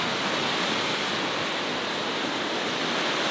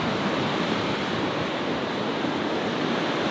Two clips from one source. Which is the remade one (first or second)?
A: second